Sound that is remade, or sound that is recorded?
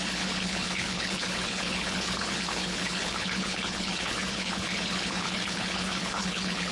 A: remade